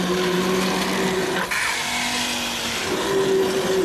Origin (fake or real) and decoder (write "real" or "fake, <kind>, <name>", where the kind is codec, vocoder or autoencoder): real